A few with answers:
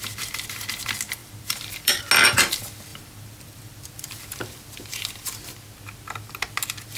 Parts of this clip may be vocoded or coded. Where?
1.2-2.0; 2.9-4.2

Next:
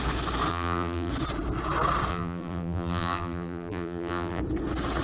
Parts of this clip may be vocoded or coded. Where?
0.5-1.1; 2.1-4.4

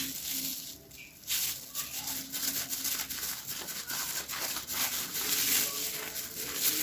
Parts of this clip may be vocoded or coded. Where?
none

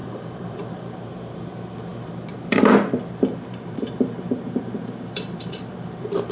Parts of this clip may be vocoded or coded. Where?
0.0-6.3

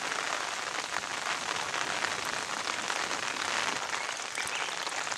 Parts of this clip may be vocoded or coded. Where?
none

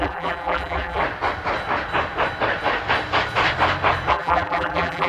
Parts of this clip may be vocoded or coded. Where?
0.0-1.0; 4.1-5.1

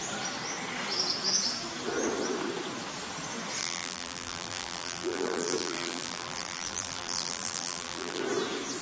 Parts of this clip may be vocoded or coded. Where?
3.6-8.2

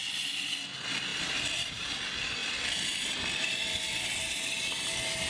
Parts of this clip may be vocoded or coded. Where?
1.1-1.9; 2.4-3.5